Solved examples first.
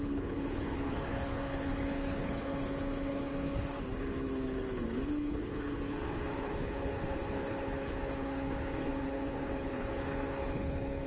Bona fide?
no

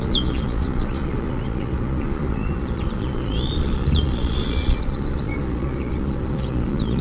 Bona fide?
no